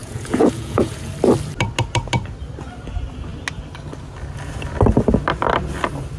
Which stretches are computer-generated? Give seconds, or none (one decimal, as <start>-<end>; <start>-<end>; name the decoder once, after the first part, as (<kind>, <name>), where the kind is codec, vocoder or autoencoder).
0.0-1.1 (vocoder, Vocos)